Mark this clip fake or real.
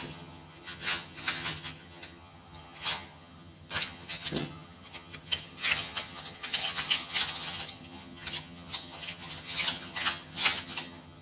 fake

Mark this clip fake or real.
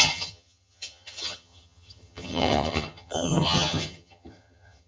fake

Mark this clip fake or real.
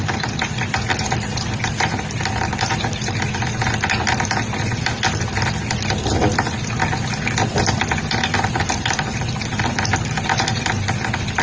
real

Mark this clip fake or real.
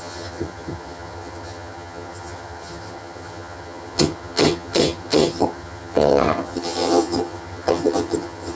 fake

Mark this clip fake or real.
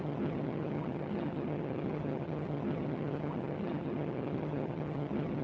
fake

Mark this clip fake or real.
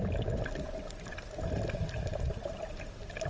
real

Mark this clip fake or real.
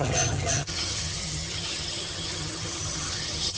fake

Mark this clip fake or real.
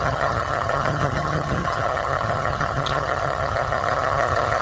fake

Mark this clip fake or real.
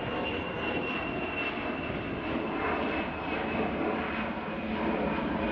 real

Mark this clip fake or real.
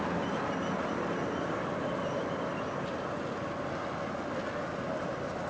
real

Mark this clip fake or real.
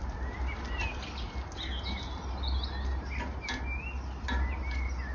real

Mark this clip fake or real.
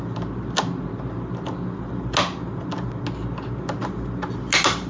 real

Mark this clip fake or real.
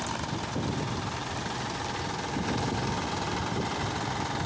real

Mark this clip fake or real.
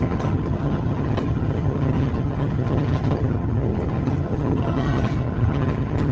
fake